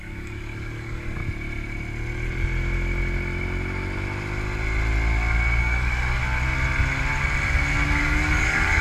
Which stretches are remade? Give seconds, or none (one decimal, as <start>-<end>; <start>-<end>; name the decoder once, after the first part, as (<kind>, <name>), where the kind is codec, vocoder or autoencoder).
0.0-1.2 (codec, DAC); 5.6-6.2; 8.0-8.8